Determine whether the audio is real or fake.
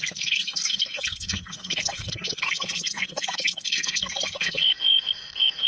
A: fake